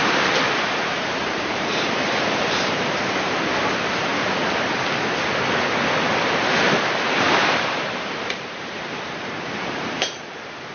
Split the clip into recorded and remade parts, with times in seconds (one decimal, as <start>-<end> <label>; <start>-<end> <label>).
0.0-4.1 remade; 4.1-6.8 recorded; 6.8-10.7 remade